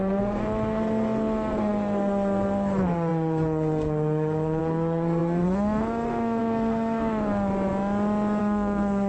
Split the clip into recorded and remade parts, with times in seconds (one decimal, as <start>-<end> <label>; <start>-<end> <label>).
0.0-7.5 remade; 7.5-8.4 recorded; 8.4-9.1 remade